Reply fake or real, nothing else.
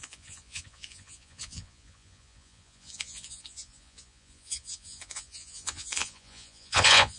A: fake